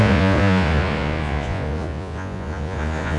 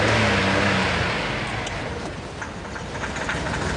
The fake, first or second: first